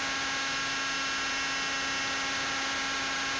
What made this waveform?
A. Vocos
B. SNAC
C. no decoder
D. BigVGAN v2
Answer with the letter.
C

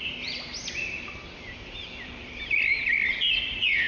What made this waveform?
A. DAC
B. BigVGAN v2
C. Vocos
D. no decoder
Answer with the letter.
B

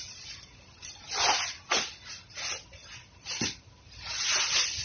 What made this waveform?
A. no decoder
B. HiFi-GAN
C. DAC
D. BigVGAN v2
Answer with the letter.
A